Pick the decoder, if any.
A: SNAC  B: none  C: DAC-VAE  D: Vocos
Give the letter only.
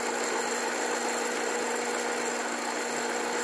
B